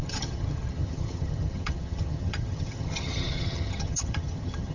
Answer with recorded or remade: remade